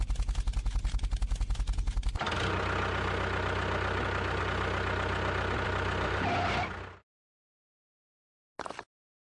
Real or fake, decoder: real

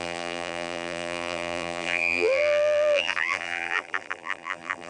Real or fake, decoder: fake, vocoder, BigVGAN v2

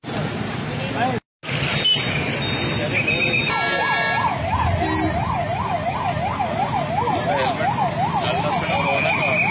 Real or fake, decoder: real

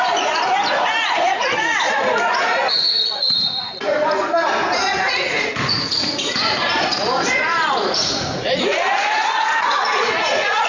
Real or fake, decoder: fake, vocoder, Vocos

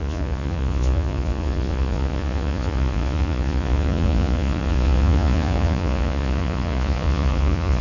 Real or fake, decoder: fake, vocoder, Vocos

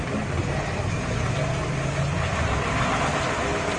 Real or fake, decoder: real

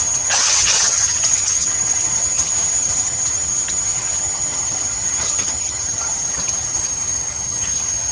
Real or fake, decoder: fake, vocoder, HiFi-GAN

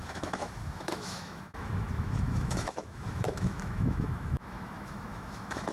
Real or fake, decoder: fake, autoencoder, DAC-VAE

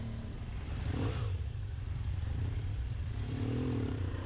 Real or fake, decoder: fake, vocoder, BigVGAN v2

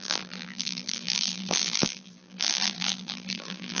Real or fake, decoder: fake, vocoder, BigVGAN v2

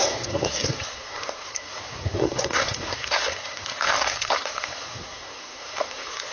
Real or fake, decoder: fake, codec, SNAC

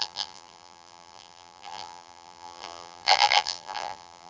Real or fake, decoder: fake, vocoder, BigVGAN v2